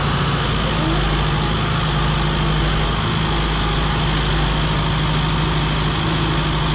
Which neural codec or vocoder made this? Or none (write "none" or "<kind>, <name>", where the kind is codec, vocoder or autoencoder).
none